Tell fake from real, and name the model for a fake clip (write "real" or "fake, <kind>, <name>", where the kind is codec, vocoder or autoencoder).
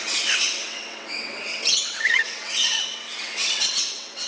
fake, vocoder, WaveNeXt